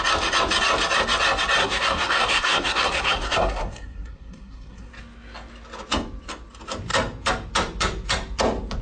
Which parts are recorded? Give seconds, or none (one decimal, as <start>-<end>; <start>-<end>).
0.0-1.6; 4.9-8.8

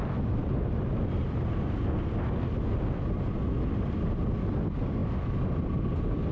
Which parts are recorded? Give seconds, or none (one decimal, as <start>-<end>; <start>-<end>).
0.0-6.3

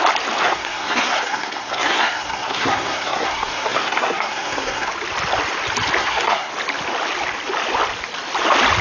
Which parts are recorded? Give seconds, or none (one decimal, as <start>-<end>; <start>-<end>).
0.0-0.4; 4.9-6.0; 6.5-8.8

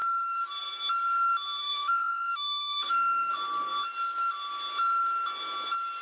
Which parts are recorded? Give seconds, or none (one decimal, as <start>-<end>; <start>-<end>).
0.5-1.6; 3.3-6.0